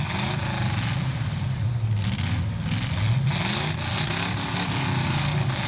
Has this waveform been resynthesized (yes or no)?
no